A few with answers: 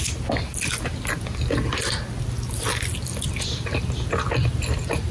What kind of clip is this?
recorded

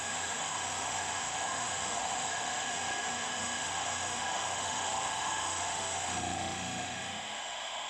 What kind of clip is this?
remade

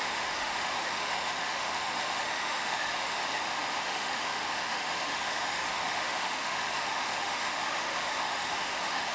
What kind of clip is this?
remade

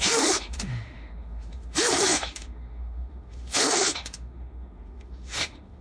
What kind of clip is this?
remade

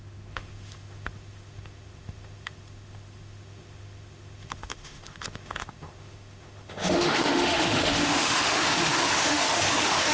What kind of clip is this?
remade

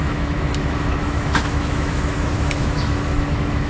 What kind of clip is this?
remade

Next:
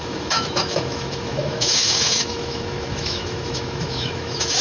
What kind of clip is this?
remade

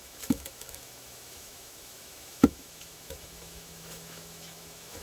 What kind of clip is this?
remade